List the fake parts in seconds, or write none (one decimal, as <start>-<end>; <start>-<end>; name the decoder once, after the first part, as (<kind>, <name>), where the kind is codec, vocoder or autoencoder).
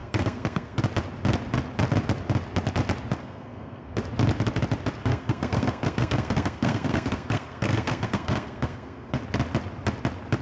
0.0-0.8 (codec, SNAC); 3.2-4.0; 5.0-9.2